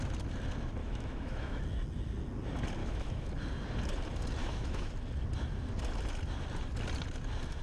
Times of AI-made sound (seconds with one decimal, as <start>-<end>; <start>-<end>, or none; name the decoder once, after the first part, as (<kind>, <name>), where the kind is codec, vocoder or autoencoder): 0.8-1.6 (autoencoder, DAC-VAE); 2.8-3.3; 4.4-4.9